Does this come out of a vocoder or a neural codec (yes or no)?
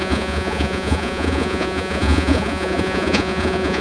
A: yes